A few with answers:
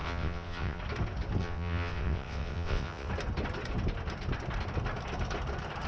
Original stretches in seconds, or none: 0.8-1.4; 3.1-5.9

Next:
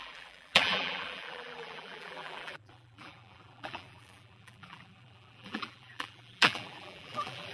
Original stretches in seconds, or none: none

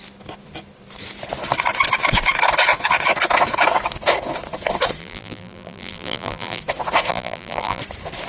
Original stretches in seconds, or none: 0.0-5.0; 6.6-7.1; 7.8-8.3

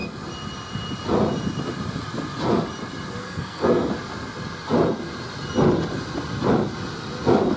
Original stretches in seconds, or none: 0.0-3.2; 3.9-7.6

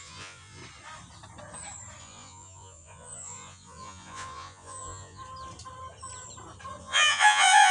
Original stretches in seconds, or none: 0.6-2.0; 5.2-6.8

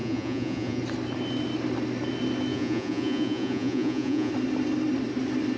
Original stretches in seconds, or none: 0.8-2.5; 4.3-5.6

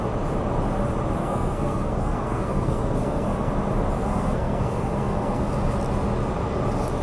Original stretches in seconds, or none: 0.0-1.2; 3.5-4.0; 5.4-7.0

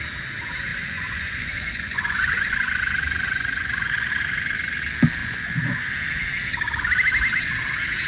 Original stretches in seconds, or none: 0.0-0.7; 4.1-5.2; 5.9-8.1